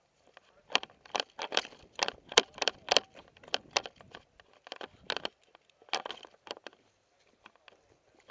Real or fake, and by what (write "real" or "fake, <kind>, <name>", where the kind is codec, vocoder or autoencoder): real